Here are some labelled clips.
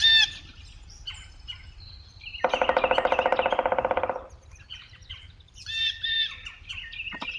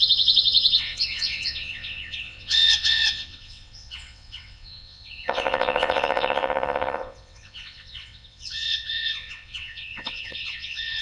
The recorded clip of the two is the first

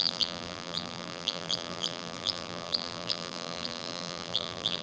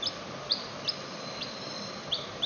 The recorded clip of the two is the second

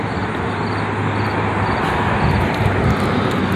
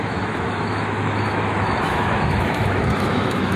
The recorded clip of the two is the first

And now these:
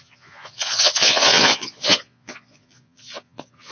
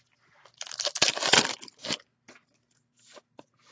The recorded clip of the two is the second